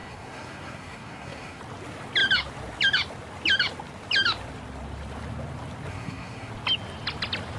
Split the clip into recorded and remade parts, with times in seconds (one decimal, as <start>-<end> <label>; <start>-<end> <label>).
0.0-1.6 remade; 1.6-5.9 recorded; 5.9-6.5 remade; 6.5-7.6 recorded